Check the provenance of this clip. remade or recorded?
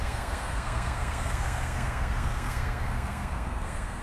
remade